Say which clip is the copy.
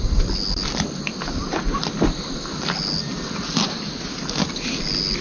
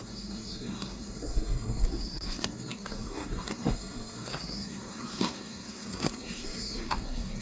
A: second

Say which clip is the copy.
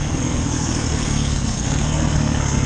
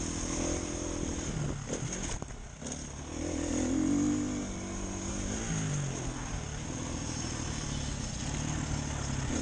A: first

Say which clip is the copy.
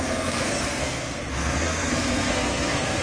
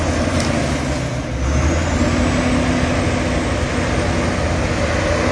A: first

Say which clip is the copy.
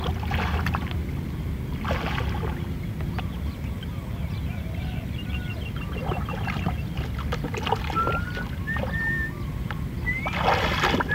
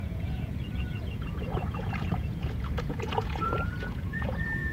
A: second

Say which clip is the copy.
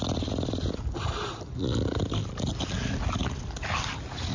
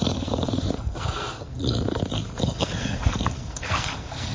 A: second